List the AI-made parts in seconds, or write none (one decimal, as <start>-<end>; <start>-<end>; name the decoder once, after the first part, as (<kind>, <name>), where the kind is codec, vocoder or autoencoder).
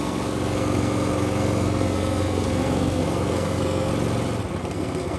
0.0-3.9 (codec, SNAC); 4.6-5.2